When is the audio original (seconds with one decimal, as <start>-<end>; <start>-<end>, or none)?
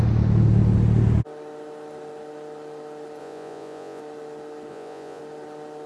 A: 0.0-3.2; 4.0-4.7; 5.2-5.9